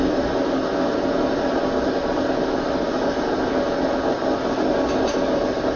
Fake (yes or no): no